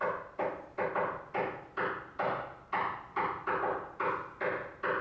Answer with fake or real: real